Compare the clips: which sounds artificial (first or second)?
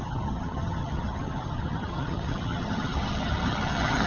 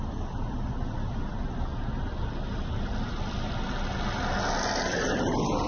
first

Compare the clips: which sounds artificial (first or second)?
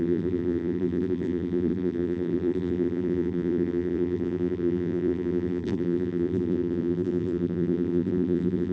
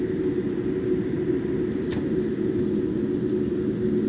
first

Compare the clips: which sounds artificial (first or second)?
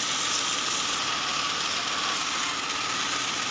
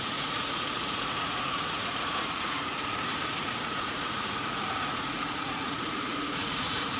second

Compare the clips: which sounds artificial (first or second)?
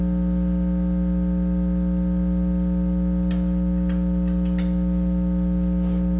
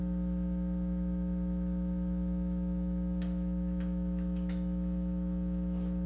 second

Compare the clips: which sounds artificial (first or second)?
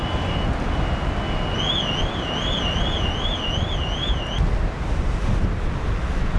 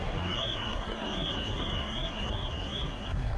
second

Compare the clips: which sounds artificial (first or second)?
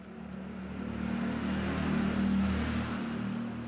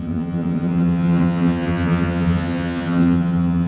second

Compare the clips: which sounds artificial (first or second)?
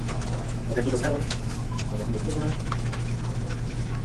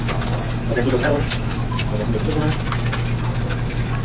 first